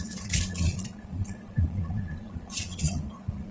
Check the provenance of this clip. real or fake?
fake